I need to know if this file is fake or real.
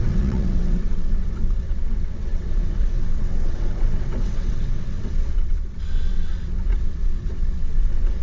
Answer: fake